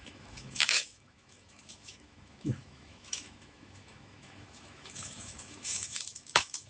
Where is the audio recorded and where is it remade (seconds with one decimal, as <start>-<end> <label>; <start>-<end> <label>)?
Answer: 0.0-6.7 remade